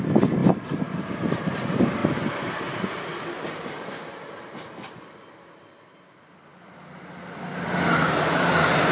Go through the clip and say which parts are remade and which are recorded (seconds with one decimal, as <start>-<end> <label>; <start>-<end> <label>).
0.0-0.4 remade; 0.4-1.1 recorded; 1.1-2.0 remade; 2.0-5.7 recorded; 5.7-6.5 remade; 6.5-8.5 recorded; 8.5-8.9 remade

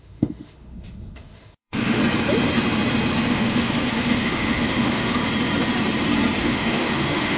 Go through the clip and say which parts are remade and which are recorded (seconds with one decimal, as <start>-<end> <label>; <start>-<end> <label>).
0.0-2.0 remade; 2.0-3.3 recorded; 3.3-5.2 remade; 5.2-6.4 recorded; 6.4-7.4 remade

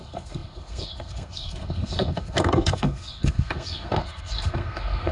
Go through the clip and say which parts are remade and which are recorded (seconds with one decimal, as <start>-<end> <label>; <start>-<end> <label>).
0.0-5.1 remade

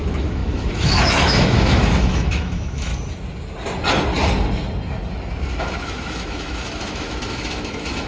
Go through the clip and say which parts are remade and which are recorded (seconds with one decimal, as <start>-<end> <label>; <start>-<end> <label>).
0.0-2.9 remade; 2.9-5.6 recorded; 5.6-8.1 remade

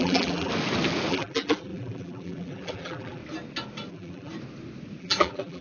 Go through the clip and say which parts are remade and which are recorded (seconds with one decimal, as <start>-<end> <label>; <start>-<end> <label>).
0.0-0.5 remade; 0.5-1.1 recorded; 1.1-3.2 remade; 3.2-3.9 recorded; 3.9-4.3 remade; 4.3-5.0 recorded; 5.0-5.6 remade